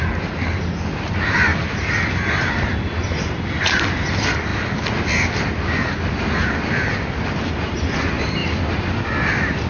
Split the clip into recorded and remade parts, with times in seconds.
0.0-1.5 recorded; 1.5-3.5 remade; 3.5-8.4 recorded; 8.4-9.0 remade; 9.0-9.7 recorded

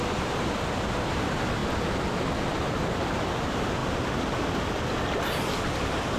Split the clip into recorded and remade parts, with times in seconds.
0.0-6.2 recorded

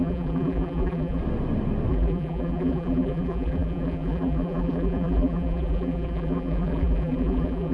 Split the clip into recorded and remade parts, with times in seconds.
0.0-1.2 remade; 1.2-1.9 recorded; 1.9-7.7 remade

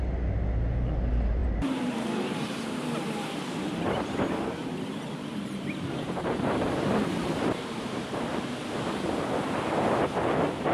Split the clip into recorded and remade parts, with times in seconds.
0.0-1.4 recorded; 1.4-3.8 remade; 3.8-4.6 recorded; 4.6-8.1 remade; 8.1-10.7 recorded

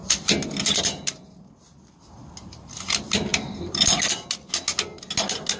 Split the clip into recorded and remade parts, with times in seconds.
0.0-3.3 recorded; 3.3-4.3 remade; 4.3-5.6 recorded

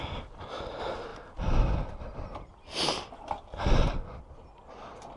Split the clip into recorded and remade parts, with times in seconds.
0.0-5.2 recorded

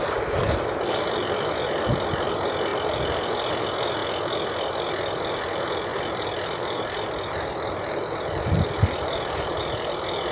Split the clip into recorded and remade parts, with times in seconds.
0.0-5.9 recorded; 5.9-9.6 remade; 9.6-10.3 recorded

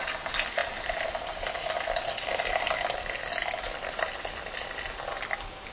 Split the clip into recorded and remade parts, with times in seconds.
0.0-0.6 recorded; 0.6-1.7 remade; 1.7-5.7 recorded